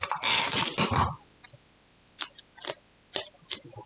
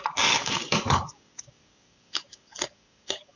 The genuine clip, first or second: first